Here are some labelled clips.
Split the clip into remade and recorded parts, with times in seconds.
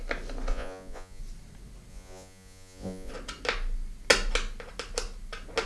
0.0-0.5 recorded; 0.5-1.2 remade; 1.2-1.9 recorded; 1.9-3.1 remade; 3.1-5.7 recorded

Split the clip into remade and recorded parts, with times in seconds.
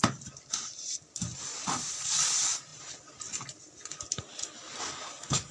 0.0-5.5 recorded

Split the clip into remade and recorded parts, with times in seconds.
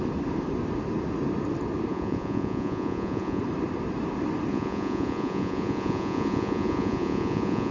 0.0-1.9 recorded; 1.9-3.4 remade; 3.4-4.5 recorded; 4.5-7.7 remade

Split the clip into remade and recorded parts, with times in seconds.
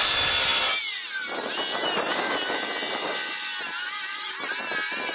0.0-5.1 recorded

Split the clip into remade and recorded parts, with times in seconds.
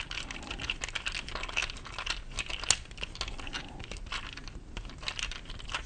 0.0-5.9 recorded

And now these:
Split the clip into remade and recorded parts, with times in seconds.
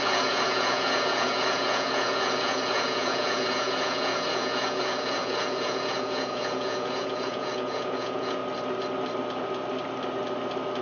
0.0-8.4 remade; 8.4-10.8 recorded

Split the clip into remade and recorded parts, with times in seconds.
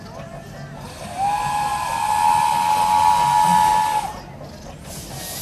0.0-5.4 recorded